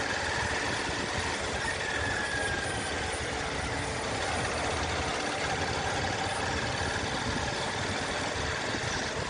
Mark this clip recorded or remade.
recorded